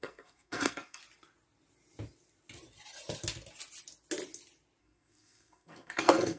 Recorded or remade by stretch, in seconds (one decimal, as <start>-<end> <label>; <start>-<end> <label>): 0.0-1.0 remade; 1.0-4.8 recorded; 4.8-6.4 remade